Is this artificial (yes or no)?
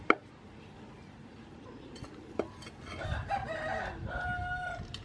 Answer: no